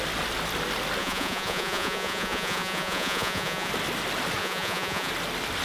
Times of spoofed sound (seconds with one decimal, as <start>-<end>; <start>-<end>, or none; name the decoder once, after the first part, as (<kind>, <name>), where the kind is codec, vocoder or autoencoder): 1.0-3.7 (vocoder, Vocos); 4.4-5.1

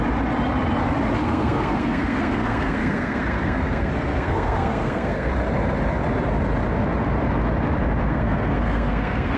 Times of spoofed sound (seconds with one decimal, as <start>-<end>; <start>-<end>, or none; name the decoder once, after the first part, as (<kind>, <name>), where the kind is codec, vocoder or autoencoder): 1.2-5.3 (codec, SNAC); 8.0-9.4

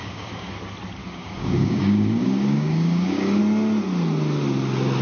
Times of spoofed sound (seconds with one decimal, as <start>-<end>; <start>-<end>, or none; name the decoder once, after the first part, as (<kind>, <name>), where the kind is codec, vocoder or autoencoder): 0.0-0.5 (codec, DAC); 1.0-3.4

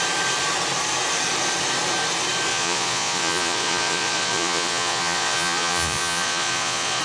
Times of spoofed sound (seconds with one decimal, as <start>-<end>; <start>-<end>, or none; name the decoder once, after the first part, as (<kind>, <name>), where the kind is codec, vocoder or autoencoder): 2.5-7.0 (vocoder, Vocos)